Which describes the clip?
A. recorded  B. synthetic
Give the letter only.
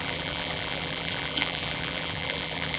B